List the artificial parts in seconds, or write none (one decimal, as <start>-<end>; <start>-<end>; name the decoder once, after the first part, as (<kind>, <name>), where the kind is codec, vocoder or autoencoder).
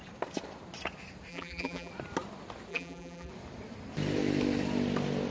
1.3-1.9 (vocoder, BigVGAN v2); 2.7-3.3